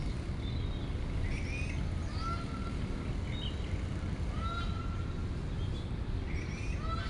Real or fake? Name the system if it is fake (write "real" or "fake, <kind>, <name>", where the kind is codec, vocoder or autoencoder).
real